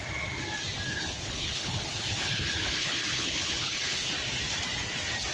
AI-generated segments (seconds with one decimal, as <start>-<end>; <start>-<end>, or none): 0.9-4.1